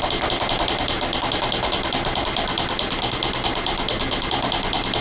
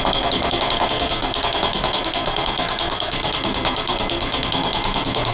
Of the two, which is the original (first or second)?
first